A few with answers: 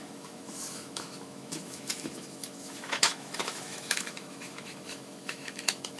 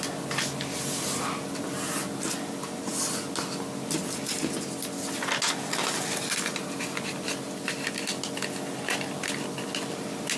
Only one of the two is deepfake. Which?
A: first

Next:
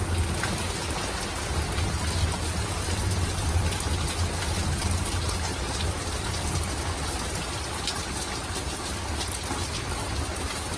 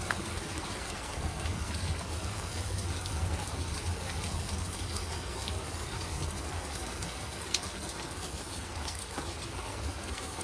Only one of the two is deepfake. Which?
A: second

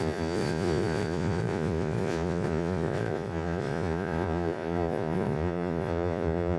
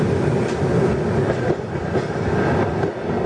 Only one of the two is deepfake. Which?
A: first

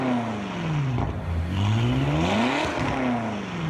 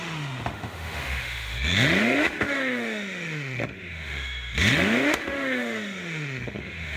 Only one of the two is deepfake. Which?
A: second